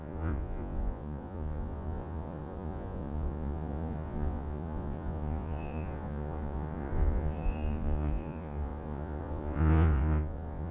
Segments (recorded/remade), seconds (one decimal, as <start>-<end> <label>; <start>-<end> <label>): 0.0-10.7 remade